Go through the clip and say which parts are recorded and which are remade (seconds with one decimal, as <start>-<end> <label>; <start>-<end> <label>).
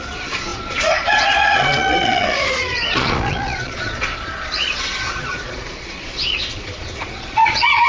0.0-7.9 remade